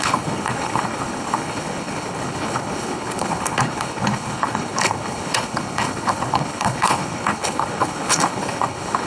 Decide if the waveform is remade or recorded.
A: remade